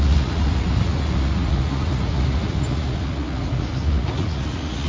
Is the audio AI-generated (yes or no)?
yes